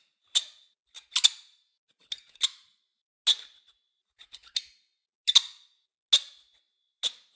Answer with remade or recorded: recorded